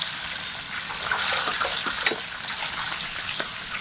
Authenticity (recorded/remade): recorded